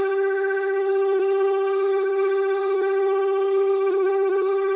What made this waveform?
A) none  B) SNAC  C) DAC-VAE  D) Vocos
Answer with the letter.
B